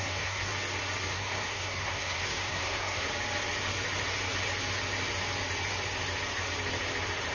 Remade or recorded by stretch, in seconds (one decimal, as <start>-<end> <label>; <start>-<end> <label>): 0.0-0.5 remade; 0.5-1.1 recorded; 1.1-3.1 remade; 3.1-7.3 recorded